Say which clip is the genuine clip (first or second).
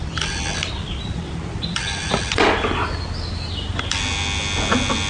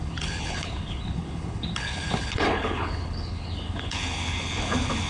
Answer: first